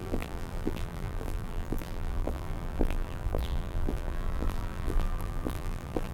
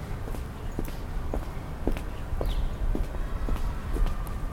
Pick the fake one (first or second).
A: first